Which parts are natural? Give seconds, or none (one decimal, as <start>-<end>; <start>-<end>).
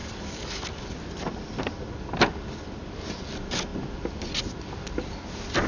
2.0-5.7